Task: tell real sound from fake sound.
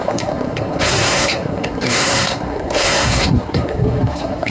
fake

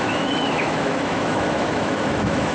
fake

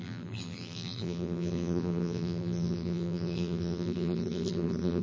fake